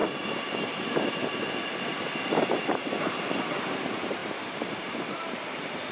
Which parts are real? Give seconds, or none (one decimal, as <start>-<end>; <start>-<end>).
0.0-5.9